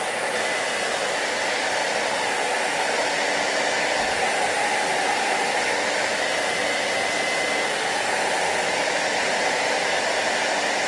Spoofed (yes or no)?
no